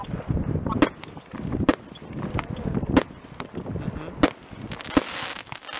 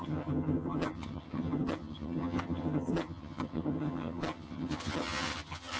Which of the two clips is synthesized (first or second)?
second